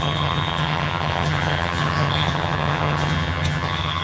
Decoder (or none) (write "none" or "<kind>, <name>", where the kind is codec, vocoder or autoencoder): vocoder, HiFi-GAN